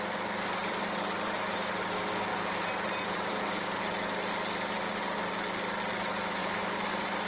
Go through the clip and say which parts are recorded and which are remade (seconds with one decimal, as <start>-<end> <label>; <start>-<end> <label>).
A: 0.0-0.6 recorded; 0.6-1.7 remade; 1.7-2.3 recorded; 2.3-3.9 remade; 3.9-6.4 recorded; 6.4-7.3 remade